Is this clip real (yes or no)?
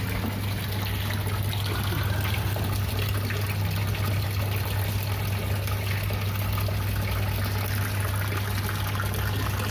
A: yes